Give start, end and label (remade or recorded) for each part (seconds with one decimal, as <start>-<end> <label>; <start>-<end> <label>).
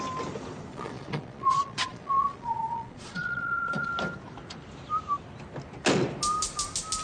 0.0-0.7 recorded; 0.7-3.9 remade; 3.9-7.0 recorded